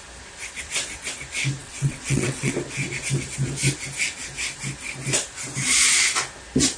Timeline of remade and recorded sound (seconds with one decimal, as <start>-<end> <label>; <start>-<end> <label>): 0.0-1.6 recorded; 1.6-2.5 remade; 2.5-6.8 recorded